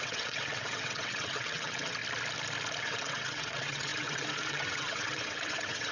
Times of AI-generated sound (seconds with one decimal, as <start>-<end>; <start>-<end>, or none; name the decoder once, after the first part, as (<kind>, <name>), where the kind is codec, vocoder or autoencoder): 0.0-2.0 (vocoder, WaveNeXt); 2.8-5.9